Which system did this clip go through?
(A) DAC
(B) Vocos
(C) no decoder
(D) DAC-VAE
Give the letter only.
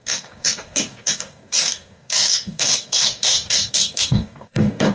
A